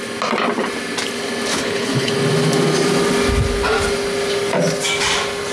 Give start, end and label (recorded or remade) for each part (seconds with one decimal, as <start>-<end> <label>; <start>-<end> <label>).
0.0-1.5 recorded; 1.5-2.1 remade; 2.1-5.5 recorded